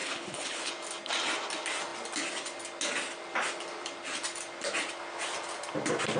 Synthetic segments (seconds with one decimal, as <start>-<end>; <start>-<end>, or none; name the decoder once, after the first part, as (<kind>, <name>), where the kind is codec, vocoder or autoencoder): 0.0-0.7 (codec, HILCodec)